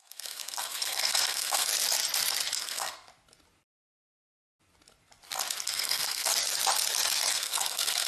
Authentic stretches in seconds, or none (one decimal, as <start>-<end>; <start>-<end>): 1.7-2.6; 3.1-5.7; 6.3-7.3